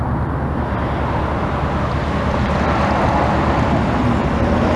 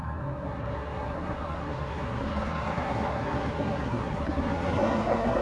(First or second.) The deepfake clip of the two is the second